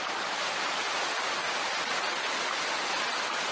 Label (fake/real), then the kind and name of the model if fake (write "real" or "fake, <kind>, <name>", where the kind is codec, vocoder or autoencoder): real